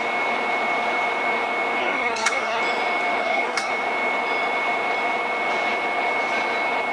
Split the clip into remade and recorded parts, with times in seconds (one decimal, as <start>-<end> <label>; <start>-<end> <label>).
0.0-1.8 recorded; 1.8-2.6 remade; 2.6-3.2 recorded; 3.2-3.7 remade; 3.7-6.9 recorded